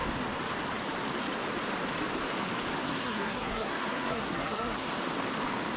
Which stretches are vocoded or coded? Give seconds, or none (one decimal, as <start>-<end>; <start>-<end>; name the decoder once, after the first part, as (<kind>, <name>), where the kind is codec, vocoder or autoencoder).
2.8-4.9 (codec, SNAC)